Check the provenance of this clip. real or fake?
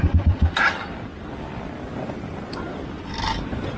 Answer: real